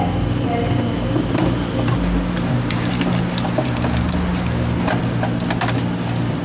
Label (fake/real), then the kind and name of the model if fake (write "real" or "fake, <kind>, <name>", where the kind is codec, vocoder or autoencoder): real